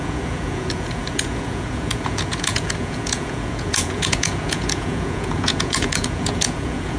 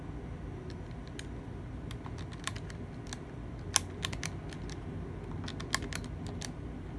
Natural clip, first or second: second